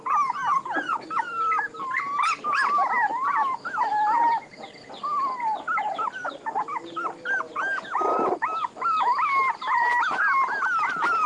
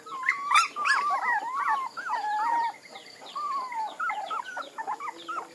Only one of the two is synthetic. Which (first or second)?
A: second